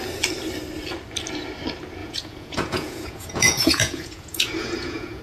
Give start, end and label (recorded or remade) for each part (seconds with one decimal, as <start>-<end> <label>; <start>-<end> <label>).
0.0-2.0 recorded; 2.0-5.2 remade